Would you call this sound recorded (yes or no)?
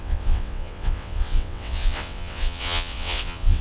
no